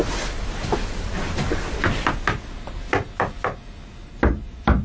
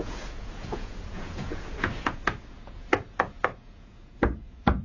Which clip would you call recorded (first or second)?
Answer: first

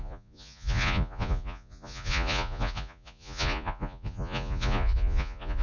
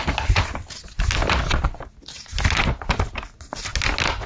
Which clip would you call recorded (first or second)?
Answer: second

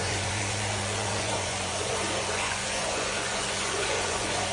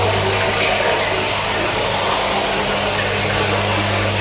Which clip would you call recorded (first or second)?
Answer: second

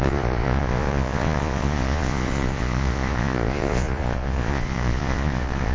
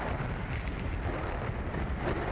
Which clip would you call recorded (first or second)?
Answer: second